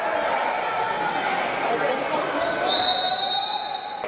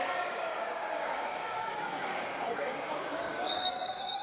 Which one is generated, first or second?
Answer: second